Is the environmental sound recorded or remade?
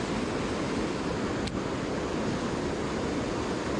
recorded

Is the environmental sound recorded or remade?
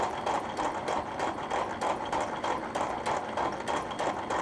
recorded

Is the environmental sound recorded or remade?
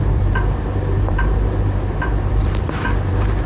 remade